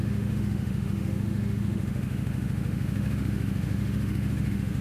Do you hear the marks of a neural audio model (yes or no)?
yes